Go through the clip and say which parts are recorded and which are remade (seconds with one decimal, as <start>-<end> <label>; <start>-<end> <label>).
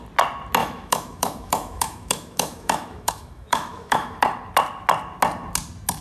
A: 0.0-0.6 recorded; 0.6-4.2 remade; 4.2-6.0 recorded